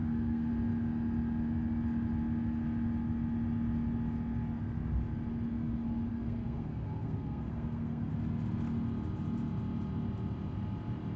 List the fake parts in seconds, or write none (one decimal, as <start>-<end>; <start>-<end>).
0.0-0.5; 6.1-8.1